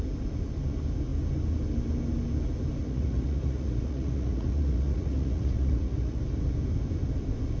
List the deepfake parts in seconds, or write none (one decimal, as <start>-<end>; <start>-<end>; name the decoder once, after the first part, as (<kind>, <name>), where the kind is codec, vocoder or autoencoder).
2.8-6.2 (vocoder, Vocos)